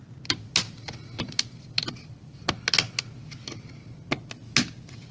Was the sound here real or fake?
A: real